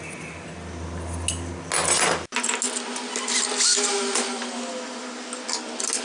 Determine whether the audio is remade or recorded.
recorded